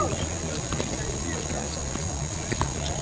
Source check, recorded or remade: remade